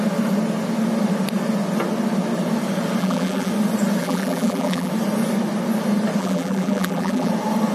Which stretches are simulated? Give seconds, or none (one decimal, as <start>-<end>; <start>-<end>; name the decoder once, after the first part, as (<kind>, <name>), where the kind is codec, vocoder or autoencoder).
3.0-3.5 (vocoder, BigVGAN v2); 4.0-4.9; 6.2-7.3